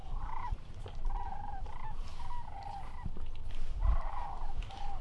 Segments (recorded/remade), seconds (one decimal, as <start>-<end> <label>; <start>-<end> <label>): 0.0-2.1 remade; 2.1-3.5 recorded; 3.5-5.0 remade